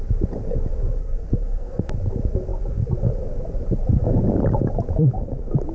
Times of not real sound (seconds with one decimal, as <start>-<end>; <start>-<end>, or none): 1.0-1.9